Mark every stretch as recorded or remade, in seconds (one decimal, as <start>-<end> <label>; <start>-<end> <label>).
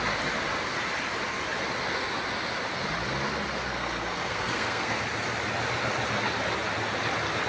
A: 0.0-3.7 recorded; 3.7-5.0 remade; 5.0-7.5 recorded